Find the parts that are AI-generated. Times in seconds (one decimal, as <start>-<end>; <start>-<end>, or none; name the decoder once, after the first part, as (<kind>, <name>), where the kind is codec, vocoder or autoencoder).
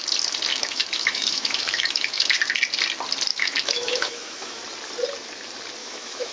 0.5-2.4 (autoencoder, DAC-VAE); 3.3-4.6; 5.8-6.3